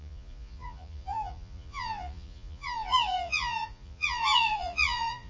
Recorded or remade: remade